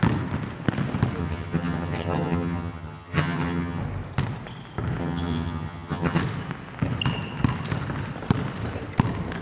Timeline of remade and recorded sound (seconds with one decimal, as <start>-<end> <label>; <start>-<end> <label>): 0.0-1.2 recorded; 1.2-3.8 remade; 3.8-5.0 recorded; 5.0-6.2 remade; 6.2-9.4 recorded